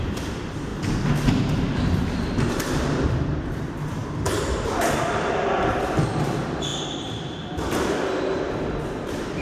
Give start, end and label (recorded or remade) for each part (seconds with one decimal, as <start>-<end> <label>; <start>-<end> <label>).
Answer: 0.0-0.7 remade; 0.7-2.5 recorded; 2.5-9.4 remade